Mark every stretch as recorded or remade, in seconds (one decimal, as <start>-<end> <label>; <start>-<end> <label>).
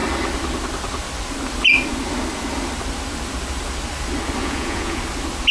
0.0-4.4 recorded; 4.4-5.0 remade; 5.0-5.5 recorded